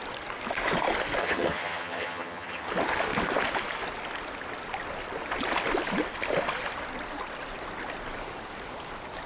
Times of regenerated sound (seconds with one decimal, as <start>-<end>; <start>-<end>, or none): 1.2-2.7